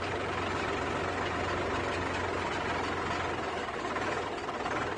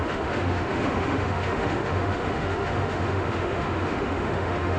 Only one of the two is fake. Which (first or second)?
second